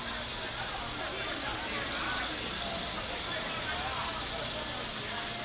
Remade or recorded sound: recorded